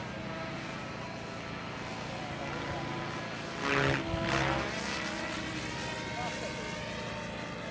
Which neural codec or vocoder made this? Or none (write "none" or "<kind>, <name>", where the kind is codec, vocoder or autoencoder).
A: none